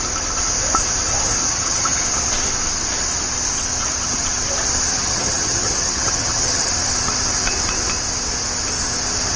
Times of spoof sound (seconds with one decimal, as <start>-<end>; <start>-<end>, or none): 1.4-2.0; 4.9-6.7